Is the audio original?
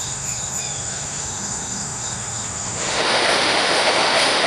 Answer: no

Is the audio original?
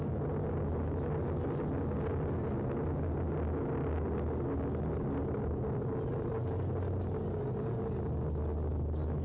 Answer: yes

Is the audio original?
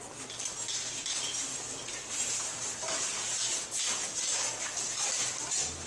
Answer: yes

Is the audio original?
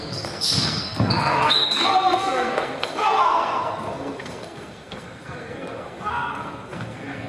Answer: no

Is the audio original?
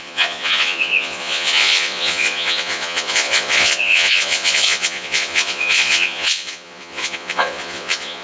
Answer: no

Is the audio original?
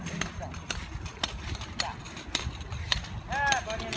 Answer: yes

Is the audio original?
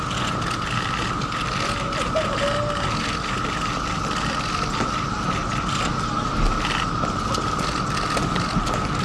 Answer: yes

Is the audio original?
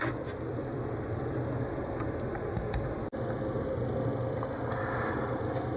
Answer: yes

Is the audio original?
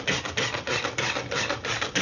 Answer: yes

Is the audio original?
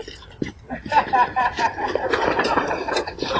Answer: no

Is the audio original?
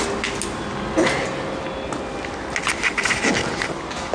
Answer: yes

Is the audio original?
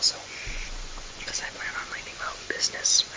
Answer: no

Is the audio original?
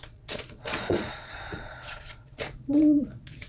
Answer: no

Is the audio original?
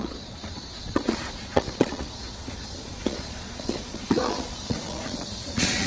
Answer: no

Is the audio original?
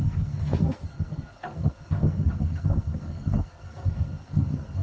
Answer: no